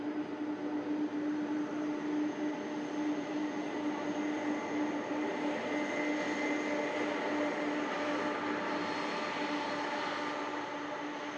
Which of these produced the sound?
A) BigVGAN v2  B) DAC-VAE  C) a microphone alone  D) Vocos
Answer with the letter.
C